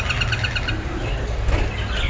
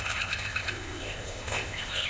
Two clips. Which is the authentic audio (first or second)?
first